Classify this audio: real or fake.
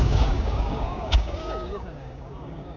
fake